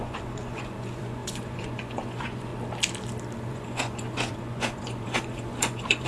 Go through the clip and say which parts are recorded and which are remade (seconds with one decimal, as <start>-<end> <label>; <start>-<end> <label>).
0.0-2.5 remade; 2.5-3.5 recorded; 3.5-6.1 remade